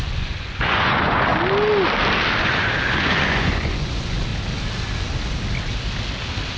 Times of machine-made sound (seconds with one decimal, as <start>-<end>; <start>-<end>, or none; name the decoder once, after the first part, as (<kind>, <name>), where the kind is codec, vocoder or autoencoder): 0.0-1.3 (vocoder, Vocos); 2.4-4.3